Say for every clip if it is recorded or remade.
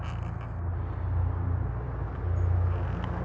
recorded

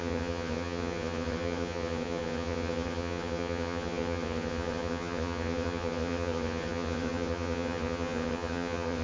remade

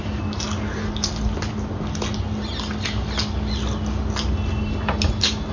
recorded